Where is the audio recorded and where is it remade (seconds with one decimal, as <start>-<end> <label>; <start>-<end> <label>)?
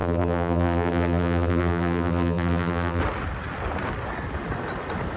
0.0-3.0 remade; 3.0-5.2 recorded